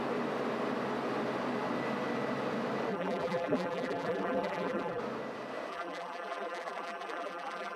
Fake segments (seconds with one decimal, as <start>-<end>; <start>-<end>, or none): 2.9-5.0; 5.7-7.8